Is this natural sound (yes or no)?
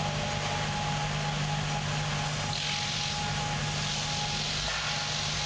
yes